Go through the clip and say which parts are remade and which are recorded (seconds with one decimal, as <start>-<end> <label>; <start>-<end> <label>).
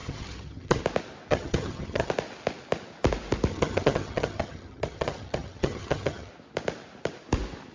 0.0-0.8 remade; 0.8-1.3 recorded; 1.3-2.1 remade; 2.1-3.5 recorded; 3.5-6.3 remade; 6.3-7.7 recorded